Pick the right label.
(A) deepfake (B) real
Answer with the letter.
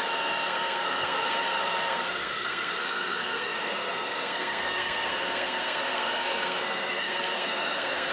A